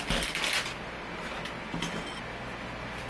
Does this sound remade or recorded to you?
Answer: recorded